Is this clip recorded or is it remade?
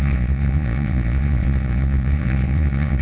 remade